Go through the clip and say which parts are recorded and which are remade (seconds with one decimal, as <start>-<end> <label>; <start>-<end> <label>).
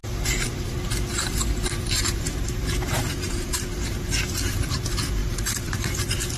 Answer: 0.0-1.1 recorded; 1.1-4.8 remade; 4.8-5.2 recorded; 5.2-6.4 remade